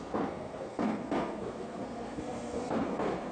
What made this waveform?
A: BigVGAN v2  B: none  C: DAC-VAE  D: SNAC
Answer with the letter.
D